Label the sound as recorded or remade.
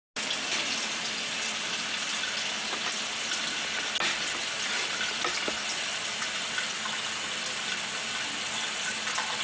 recorded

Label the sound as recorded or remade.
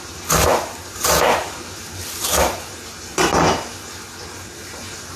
recorded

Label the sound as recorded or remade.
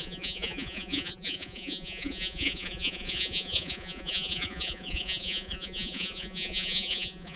remade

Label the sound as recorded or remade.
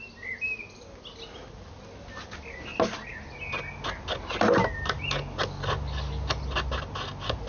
recorded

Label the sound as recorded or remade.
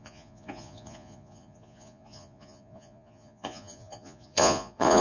remade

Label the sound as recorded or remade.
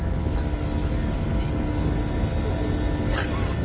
recorded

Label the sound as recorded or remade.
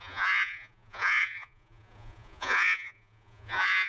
remade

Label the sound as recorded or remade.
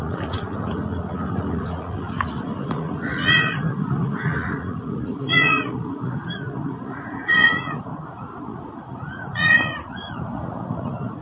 remade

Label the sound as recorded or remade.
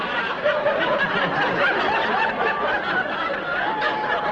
recorded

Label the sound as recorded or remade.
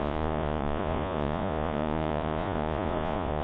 remade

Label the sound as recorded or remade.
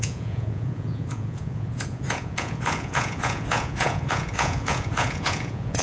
remade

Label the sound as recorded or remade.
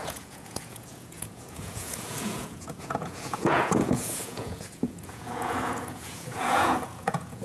remade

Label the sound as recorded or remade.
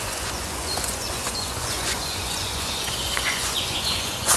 remade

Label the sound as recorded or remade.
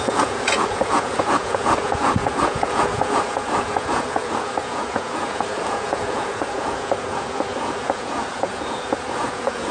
remade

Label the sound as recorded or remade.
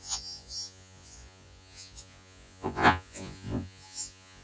remade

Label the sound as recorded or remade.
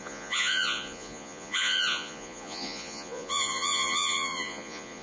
remade